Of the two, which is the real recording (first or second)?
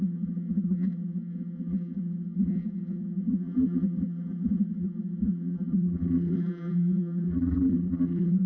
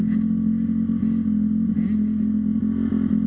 second